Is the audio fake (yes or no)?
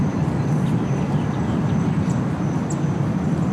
no